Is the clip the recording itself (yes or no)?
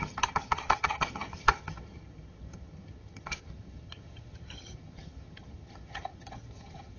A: no